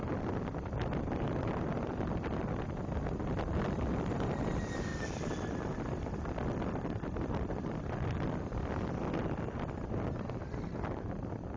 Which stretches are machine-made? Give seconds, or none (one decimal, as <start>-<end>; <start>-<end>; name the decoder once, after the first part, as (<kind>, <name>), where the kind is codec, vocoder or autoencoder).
4.9-9.1 (vocoder, BigVGAN v2)